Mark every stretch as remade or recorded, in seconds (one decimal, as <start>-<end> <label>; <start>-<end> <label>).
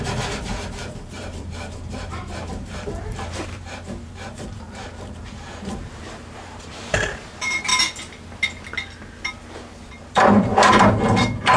0.0-7.7 remade; 7.7-9.9 recorded; 9.9-11.6 remade